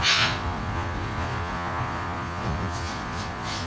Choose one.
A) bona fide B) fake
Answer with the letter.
B